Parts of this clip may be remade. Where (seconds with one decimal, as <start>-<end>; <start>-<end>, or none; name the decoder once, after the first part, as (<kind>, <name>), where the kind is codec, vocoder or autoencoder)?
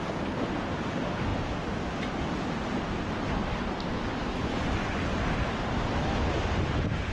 4.4-5.0 (vocoder, Vocos)